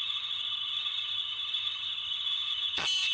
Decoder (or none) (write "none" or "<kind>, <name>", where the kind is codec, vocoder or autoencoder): vocoder, HiFi-GAN